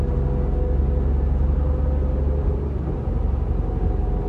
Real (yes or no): yes